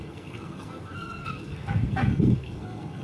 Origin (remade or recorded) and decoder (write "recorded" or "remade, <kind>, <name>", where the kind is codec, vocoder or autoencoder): remade, codec, SNAC